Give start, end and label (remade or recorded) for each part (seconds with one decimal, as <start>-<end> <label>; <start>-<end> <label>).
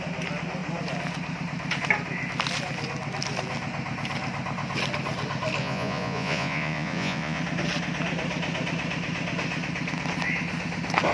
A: 0.0-5.6 recorded; 5.6-7.4 remade; 7.4-11.1 recorded